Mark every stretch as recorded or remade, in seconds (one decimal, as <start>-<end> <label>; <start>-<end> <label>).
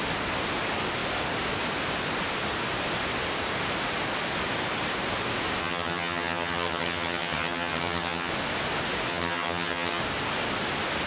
0.0-5.6 recorded; 5.6-8.3 remade; 8.3-9.1 recorded; 9.1-10.0 remade; 10.0-11.1 recorded